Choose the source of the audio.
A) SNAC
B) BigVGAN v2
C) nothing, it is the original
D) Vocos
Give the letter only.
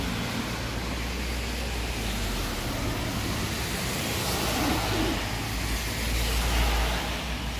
C